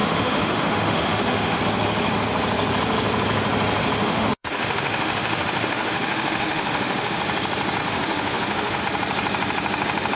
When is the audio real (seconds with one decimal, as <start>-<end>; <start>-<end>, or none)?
1.6-4.0; 7.2-7.8; 8.8-10.2